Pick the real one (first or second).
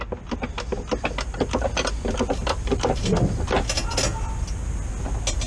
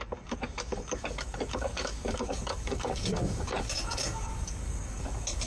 first